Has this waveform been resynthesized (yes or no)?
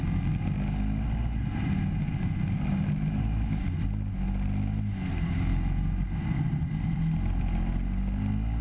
no